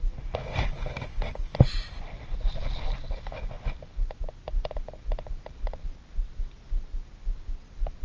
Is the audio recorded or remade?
recorded